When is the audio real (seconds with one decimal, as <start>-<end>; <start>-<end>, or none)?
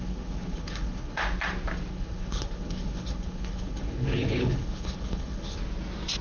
1.2-1.9; 5.6-6.2